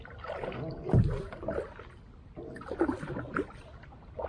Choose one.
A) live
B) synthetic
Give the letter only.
A